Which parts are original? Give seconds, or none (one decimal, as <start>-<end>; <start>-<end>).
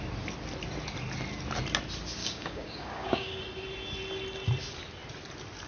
0.0-2.2; 3.4-5.7